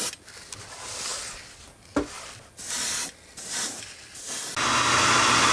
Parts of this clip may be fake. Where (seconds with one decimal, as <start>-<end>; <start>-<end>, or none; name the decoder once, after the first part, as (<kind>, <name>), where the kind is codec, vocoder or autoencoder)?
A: none